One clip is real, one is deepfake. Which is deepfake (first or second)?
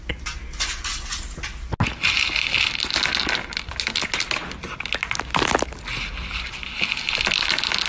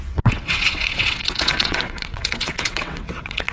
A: second